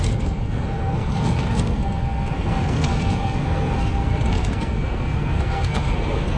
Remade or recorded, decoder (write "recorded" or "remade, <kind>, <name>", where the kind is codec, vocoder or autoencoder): remade, codec, SNAC